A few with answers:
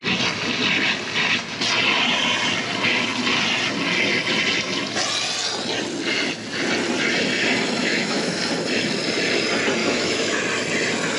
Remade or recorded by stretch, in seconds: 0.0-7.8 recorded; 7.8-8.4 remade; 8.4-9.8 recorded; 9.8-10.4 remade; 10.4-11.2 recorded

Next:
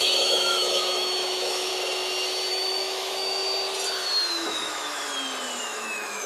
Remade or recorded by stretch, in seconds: 0.0-1.7 remade; 1.7-2.5 recorded; 2.5-3.4 remade; 3.4-4.3 recorded; 4.3-5.1 remade; 5.1-5.6 recorded; 5.6-6.3 remade

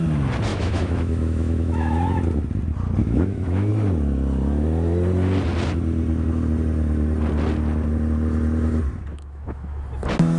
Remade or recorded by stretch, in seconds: 0.0-0.5 recorded; 0.5-2.2 remade; 2.2-3.0 recorded; 3.0-3.7 remade; 3.7-9.1 recorded; 9.1-9.8 remade; 9.8-10.4 recorded